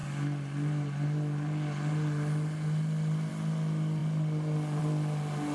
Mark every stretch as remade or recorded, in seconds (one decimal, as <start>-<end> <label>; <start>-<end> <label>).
0.0-5.5 recorded